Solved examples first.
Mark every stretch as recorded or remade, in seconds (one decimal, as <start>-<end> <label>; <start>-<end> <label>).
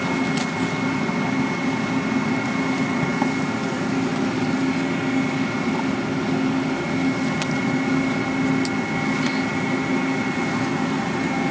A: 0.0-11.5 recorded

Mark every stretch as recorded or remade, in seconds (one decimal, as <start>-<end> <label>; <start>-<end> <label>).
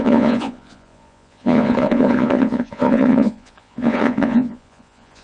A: 0.0-5.2 remade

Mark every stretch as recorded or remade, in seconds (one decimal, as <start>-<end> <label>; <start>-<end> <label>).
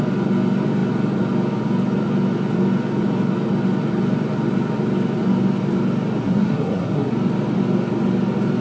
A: 0.0-6.2 recorded; 6.2-7.1 remade; 7.1-8.6 recorded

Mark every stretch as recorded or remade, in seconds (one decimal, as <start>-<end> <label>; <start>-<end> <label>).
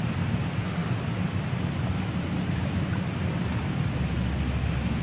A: 0.0-5.0 recorded